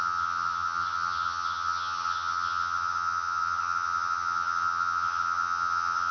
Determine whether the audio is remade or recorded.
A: remade